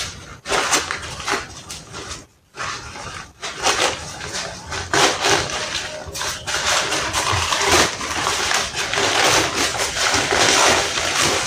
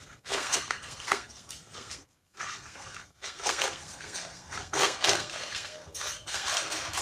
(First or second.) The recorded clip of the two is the first